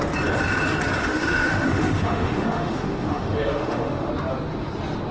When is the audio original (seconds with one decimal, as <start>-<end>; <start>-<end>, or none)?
0.0-1.0; 4.1-5.1